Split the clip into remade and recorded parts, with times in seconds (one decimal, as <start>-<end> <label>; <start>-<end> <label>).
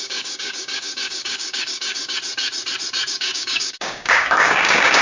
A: 0.0-2.2 remade; 2.2-3.1 recorded; 3.1-5.0 remade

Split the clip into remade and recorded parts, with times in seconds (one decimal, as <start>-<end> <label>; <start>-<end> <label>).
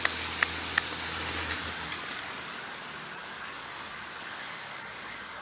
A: 0.0-1.6 recorded; 1.6-2.6 remade; 2.6-3.2 recorded; 3.2-5.4 remade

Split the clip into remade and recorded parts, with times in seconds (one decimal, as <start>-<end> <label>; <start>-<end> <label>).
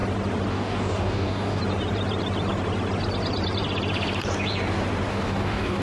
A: 0.0-0.5 recorded; 0.5-1.6 remade; 1.6-5.1 recorded; 5.1-5.8 remade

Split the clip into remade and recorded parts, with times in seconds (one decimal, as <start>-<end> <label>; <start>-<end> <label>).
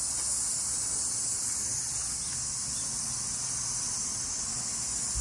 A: 0.0-5.2 recorded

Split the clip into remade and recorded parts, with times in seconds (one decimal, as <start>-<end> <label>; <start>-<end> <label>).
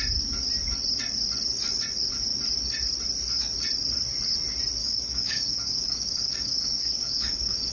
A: 0.0-4.8 recorded; 4.8-7.7 remade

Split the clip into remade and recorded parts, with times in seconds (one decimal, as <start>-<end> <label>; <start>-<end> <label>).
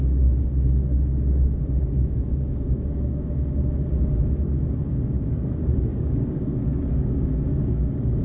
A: 0.0-8.2 remade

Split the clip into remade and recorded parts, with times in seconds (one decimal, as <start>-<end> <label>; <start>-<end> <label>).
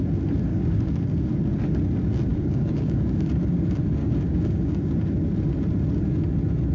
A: 0.0-0.5 recorded; 0.5-1.3 remade; 1.3-2.3 recorded; 2.3-3.3 remade; 3.3-4.0 recorded; 4.0-4.9 remade; 4.9-6.7 recorded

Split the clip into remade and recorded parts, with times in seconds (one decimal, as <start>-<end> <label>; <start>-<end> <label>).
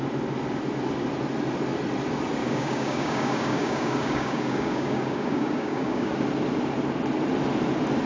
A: 0.0-2.4 recorded; 2.4-6.1 remade; 6.1-8.1 recorded